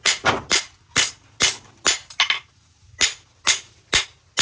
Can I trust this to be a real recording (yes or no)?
yes